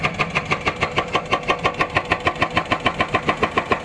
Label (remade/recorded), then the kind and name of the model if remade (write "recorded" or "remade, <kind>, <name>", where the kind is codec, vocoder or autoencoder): recorded